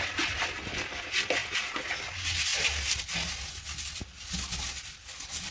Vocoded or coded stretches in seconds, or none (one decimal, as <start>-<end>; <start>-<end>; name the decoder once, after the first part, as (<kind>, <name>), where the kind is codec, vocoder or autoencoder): none